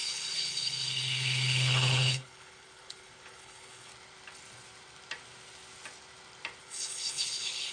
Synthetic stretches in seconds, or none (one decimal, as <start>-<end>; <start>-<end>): 0.0-3.9; 6.6-7.7